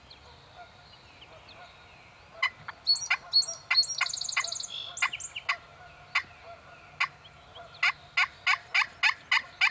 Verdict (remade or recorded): recorded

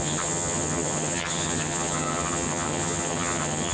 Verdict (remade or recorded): remade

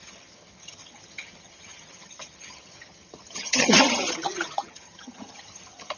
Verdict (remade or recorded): remade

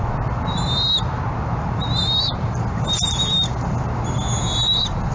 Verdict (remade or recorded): recorded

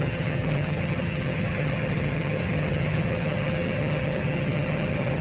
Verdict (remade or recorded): remade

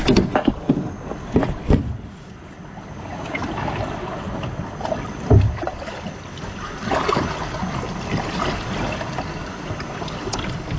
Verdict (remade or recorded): recorded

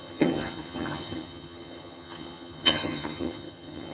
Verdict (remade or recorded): remade